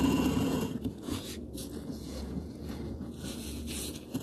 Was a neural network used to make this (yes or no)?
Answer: yes